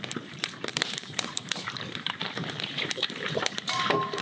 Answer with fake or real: fake